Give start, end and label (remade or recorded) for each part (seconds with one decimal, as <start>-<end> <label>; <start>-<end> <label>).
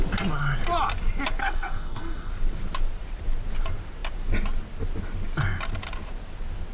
0.0-1.4 recorded; 1.4-2.3 remade; 2.3-6.7 recorded